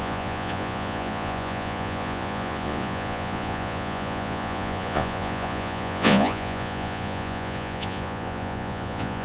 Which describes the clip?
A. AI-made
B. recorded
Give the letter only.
A